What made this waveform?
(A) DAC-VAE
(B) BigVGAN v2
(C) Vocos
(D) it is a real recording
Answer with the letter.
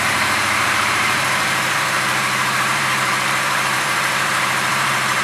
B